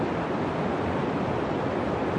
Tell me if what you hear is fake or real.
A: real